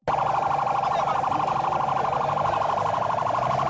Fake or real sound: real